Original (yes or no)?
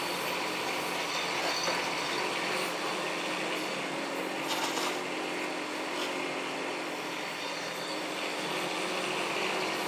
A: yes